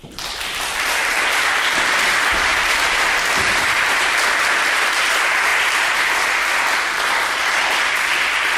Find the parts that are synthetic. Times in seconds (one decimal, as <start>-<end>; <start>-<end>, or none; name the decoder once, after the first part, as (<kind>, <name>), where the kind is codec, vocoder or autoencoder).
0.0-8.6 (vocoder, BigVGAN v2)